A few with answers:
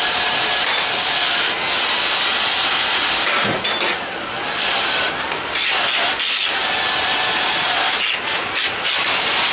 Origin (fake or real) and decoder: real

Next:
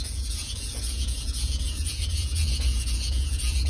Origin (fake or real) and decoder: fake, vocoder, Vocos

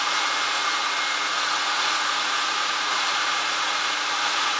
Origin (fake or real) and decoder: fake, vocoder, Vocos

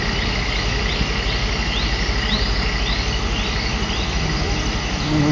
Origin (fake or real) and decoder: real